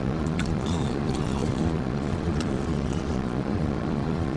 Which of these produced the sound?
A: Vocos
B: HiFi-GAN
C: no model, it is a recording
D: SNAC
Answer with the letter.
A